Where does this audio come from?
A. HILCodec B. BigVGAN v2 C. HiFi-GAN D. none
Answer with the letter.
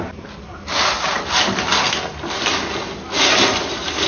D